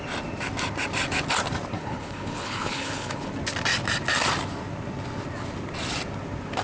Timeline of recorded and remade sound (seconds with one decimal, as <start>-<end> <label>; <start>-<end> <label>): 0.0-1.8 recorded; 1.8-3.3 remade; 3.3-6.6 recorded